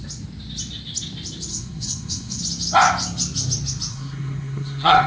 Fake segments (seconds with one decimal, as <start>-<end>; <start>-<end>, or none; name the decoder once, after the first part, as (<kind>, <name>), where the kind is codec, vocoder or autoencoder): 1.5-2.4 (codec, SNAC); 3.9-5.1